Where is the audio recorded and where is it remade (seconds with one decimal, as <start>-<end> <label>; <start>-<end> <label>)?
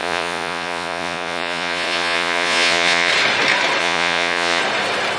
0.0-3.1 remade; 3.1-3.8 recorded; 3.8-4.6 remade; 4.6-5.2 recorded